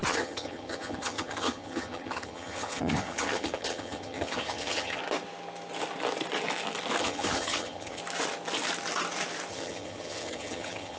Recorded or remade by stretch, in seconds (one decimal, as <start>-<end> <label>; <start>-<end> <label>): 0.0-5.0 remade; 5.0-7.0 recorded; 7.0-8.0 remade; 8.0-9.5 recorded; 9.5-11.0 remade